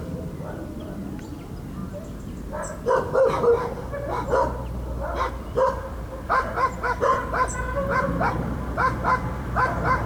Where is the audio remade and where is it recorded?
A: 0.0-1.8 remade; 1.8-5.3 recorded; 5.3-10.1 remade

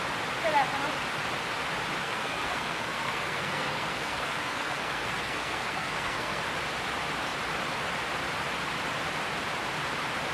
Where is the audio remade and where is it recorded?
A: 0.0-2.0 recorded; 2.0-6.4 remade; 6.4-10.3 recorded

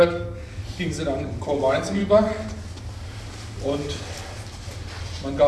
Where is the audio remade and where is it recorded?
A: 0.0-0.6 remade; 0.6-1.2 recorded; 1.2-2.0 remade; 2.0-5.5 recorded

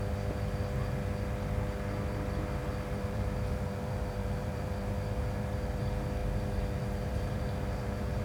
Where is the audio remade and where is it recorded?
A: 0.0-2.6 recorded; 2.6-5.8 remade; 5.8-6.2 recorded; 6.2-8.2 remade

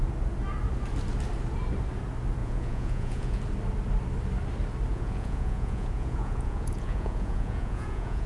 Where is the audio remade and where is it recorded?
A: 0.0-2.4 recorded; 2.4-3.4 remade; 3.4-4.9 recorded; 4.9-8.3 remade